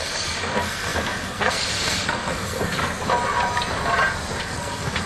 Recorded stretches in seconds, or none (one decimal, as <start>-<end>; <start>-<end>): 2.8-4.4

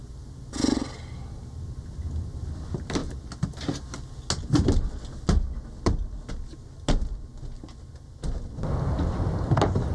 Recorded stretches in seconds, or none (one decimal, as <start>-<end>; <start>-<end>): 0.0-9.9